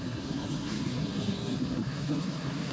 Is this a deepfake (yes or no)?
yes